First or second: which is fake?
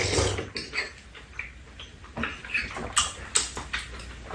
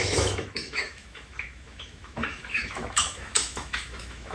second